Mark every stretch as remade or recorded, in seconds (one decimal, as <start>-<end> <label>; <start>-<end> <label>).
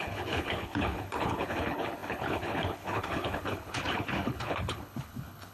0.0-5.5 remade